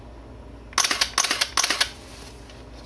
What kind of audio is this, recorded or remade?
recorded